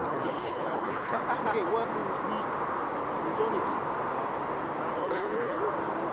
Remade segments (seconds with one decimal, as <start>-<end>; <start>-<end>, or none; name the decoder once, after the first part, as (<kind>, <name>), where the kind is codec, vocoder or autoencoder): 0.0-1.2 (codec, HILCodec); 5.0-5.6

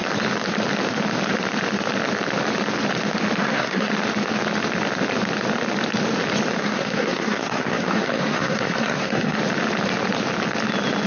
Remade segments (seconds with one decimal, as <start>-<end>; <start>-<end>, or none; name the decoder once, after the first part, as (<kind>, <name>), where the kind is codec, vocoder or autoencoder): 3.4-3.9 (codec, SNAC); 6.6-9.4